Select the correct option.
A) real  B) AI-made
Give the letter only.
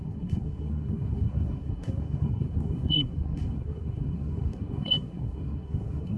B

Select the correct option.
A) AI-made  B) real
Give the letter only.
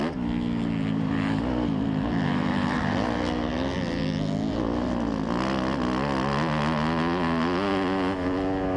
B